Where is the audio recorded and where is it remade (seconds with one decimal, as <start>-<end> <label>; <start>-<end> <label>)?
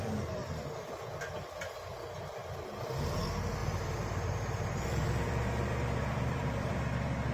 0.0-2.4 recorded; 2.4-3.2 remade; 3.2-3.6 recorded; 3.6-6.8 remade; 6.8-7.3 recorded